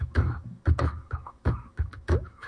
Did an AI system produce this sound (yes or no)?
yes